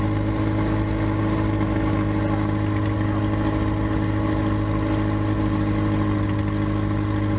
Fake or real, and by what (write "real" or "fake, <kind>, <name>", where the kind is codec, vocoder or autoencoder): real